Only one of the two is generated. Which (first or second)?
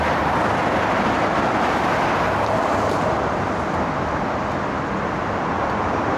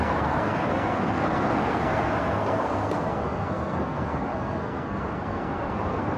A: second